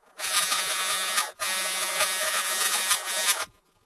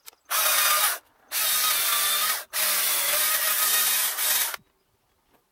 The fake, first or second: first